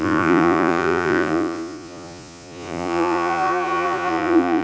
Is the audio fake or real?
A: fake